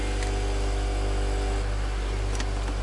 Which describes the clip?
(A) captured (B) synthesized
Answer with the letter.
A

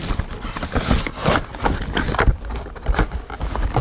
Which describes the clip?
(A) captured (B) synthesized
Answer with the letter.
A